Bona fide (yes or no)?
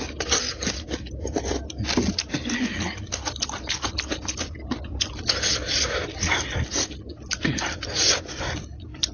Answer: yes